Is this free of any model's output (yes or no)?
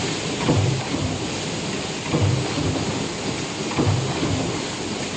yes